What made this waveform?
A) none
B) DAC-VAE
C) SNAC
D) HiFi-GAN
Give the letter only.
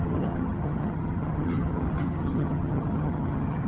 D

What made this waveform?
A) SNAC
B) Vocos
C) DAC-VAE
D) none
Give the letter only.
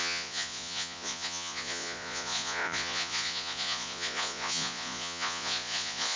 B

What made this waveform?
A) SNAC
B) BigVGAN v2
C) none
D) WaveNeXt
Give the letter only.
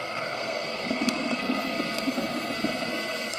A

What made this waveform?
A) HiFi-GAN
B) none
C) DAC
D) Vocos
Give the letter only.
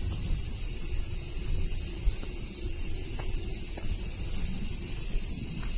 B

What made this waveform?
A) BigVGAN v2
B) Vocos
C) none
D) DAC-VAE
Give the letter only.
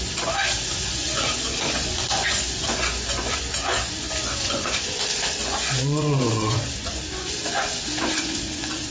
B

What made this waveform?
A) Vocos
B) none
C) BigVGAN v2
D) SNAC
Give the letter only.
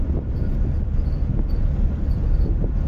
B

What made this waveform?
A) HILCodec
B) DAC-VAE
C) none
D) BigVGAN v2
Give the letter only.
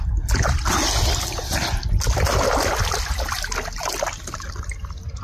C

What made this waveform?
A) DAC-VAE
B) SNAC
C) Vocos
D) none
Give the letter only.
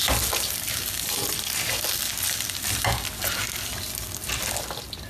D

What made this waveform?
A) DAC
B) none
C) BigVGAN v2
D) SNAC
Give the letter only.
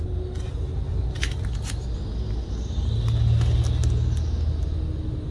B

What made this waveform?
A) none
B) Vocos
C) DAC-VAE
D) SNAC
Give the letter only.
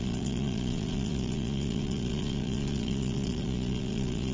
B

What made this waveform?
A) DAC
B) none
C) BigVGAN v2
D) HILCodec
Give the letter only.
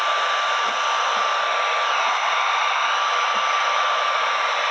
B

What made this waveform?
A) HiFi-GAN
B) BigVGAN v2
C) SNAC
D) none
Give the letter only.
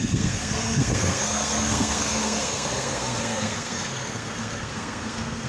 C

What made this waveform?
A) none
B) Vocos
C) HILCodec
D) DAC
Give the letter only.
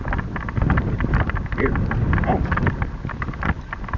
A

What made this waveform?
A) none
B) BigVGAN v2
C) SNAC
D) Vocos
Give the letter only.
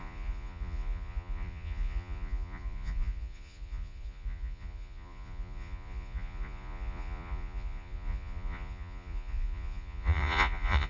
D